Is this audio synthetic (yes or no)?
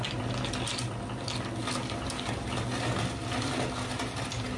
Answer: no